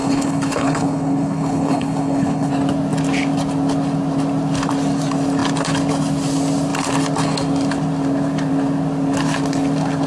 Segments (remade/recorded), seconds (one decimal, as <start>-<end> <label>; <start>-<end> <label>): 0.0-2.5 remade; 2.5-10.1 recorded